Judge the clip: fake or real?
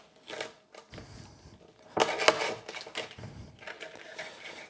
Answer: real